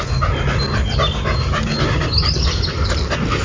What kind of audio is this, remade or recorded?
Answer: recorded